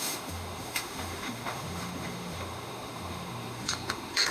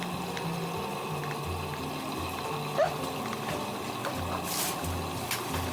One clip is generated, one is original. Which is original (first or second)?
second